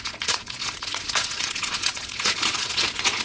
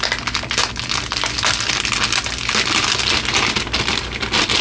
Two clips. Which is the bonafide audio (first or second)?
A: second